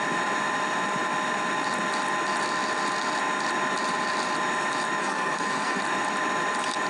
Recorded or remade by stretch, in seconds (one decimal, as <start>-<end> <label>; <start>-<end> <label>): 0.0-5.0 recorded; 5.0-5.8 remade; 5.8-6.9 recorded